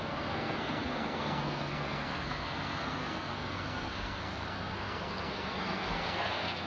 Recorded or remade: remade